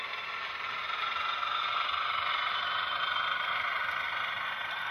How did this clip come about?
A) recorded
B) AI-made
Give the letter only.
A